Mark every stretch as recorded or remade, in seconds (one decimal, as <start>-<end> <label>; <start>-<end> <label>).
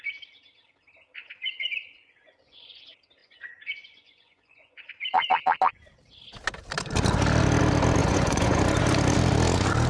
0.0-1.2 recorded; 1.2-2.8 remade; 2.8-3.2 recorded; 3.2-4.8 remade; 4.8-8.0 recorded; 8.0-8.6 remade; 8.6-9.9 recorded